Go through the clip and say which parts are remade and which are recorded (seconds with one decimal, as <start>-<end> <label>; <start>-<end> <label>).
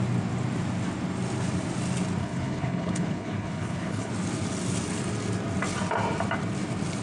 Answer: 0.0-2.2 recorded; 2.2-4.1 remade; 4.1-7.0 recorded